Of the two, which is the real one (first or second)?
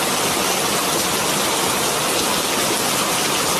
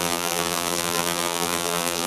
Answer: first